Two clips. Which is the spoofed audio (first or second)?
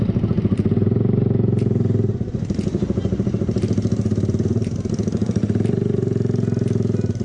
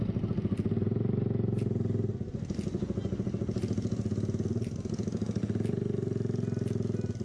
first